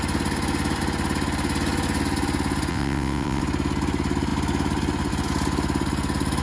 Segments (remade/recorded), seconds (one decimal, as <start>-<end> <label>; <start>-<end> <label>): 0.0-2.7 recorded; 2.7-3.4 remade; 3.4-6.4 recorded